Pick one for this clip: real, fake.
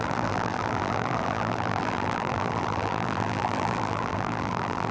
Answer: fake